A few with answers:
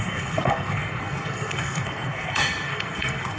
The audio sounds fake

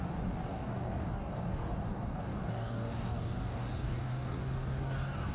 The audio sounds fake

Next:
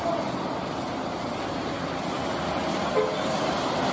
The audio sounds real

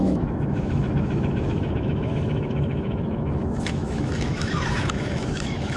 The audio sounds fake